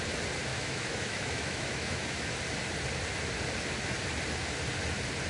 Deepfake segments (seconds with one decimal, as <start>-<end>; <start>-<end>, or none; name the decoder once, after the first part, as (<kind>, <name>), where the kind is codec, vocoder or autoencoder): 0.5-2.4 (autoencoder, DAC-VAE)